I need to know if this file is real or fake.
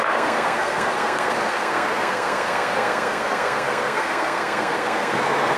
fake